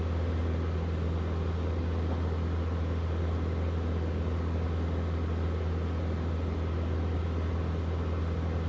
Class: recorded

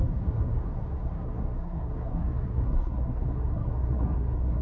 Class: remade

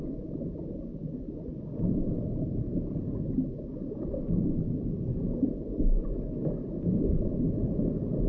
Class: recorded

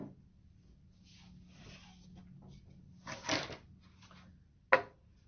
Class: recorded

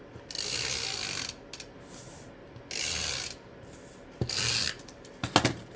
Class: recorded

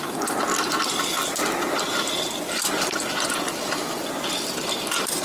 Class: recorded